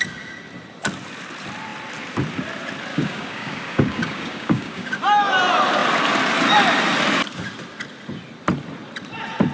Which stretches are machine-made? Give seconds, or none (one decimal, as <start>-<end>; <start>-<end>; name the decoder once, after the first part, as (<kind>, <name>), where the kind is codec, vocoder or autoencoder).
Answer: 2.9-5.0 (codec, DAC)